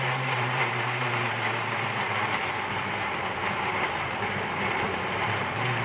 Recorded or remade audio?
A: recorded